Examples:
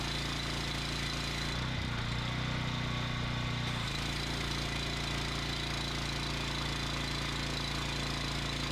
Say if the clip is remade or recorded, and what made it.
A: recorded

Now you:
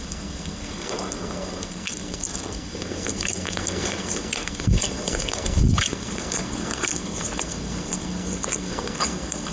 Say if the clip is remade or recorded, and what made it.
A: remade, codec, SNAC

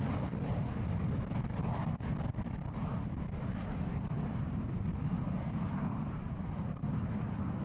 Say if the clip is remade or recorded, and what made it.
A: recorded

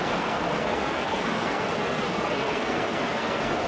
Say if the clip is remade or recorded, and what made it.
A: remade, codec, SNAC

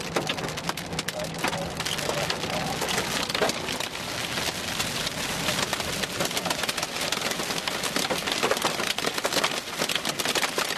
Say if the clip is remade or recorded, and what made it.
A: recorded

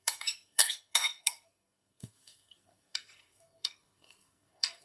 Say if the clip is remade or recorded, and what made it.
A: remade, codec, SNAC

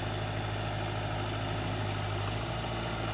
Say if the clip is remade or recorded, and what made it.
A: recorded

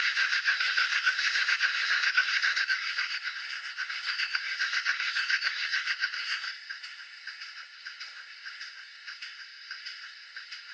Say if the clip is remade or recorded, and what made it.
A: remade, codec, SNAC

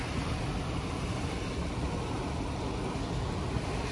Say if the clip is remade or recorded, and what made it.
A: recorded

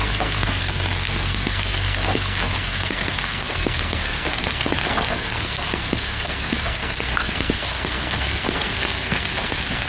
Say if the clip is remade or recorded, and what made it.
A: remade, codec, SNAC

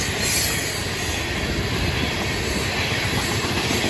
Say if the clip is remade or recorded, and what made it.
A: recorded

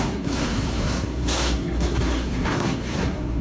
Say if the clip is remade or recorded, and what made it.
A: remade, codec, SNAC